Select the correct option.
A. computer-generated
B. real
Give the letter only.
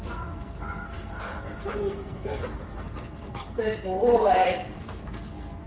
A